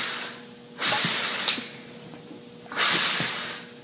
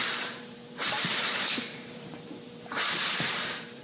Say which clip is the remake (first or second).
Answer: second